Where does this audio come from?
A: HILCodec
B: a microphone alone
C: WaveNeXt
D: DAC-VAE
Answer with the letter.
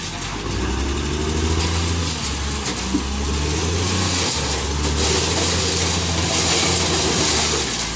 B